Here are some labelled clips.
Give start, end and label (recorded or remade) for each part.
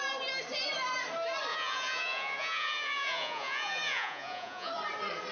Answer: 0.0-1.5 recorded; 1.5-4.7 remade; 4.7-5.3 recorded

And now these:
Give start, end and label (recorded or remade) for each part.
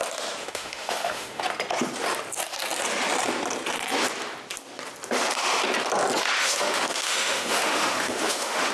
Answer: 0.0-0.4 recorded; 0.4-1.4 remade; 1.4-6.4 recorded; 6.4-8.7 remade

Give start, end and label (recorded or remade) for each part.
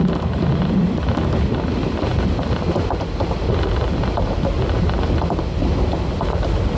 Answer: 0.0-6.8 recorded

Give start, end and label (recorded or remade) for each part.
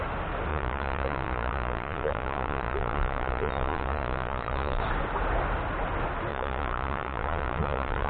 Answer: 0.0-0.5 recorded; 0.5-4.8 remade; 4.8-6.3 recorded; 6.3-8.1 remade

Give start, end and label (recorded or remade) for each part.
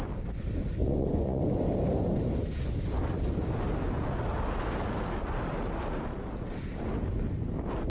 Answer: 0.0-0.8 recorded; 0.8-1.4 remade; 1.4-7.9 recorded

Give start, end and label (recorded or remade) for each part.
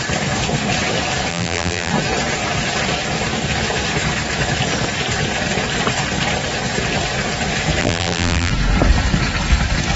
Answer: 0.0-1.3 recorded; 1.3-1.9 remade; 1.9-7.8 recorded; 7.8-8.5 remade; 8.5-10.0 recorded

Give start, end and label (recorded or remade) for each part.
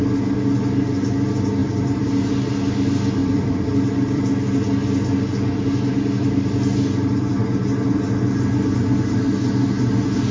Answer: 0.0-1.6 recorded; 1.6-2.1 remade; 2.1-3.2 recorded; 3.2-4.3 remade; 4.3-10.3 recorded